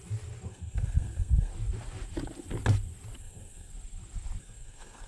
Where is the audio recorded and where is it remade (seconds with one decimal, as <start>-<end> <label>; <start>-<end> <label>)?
0.0-0.5 recorded; 0.5-1.5 remade; 1.5-3.2 recorded; 3.2-3.7 remade; 3.7-4.4 recorded; 4.4-5.1 remade